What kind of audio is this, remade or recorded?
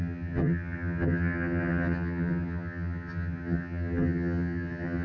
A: remade